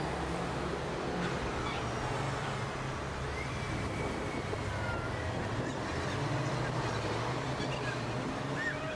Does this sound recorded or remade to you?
recorded